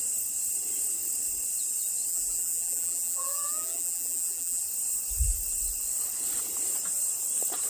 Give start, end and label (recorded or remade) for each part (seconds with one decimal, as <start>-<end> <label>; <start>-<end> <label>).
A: 0.0-2.1 recorded; 2.1-4.6 remade; 4.6-7.7 recorded